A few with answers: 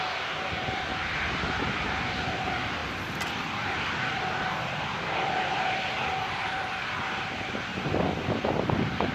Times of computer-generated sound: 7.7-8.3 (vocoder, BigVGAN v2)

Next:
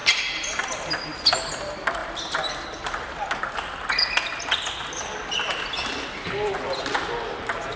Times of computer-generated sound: 0.0-0.6 (vocoder, BigVGAN v2); 2.0-3.1

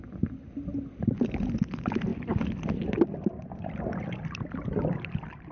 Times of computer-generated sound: none

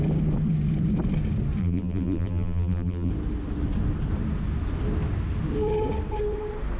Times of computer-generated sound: 1.6-3.1 (vocoder, BigVGAN v2)

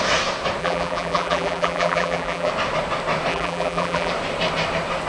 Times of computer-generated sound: 0.6-2.5 (vocoder, BigVGAN v2); 3.3-4.1

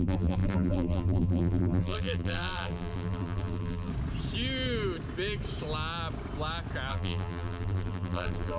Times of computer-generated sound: 0.0-3.9 (vocoder, BigVGAN v2); 6.9-8.6